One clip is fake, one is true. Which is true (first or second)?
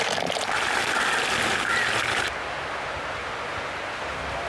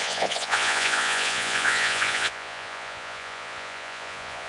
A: first